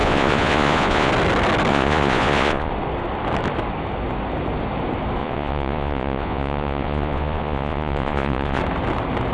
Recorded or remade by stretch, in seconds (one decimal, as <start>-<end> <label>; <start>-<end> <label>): 0.0-1.1 remade; 1.1-1.7 recorded; 1.7-2.7 remade; 2.7-5.2 recorded; 5.2-8.6 remade; 8.6-9.3 recorded